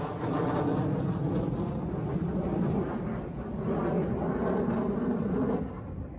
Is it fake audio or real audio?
real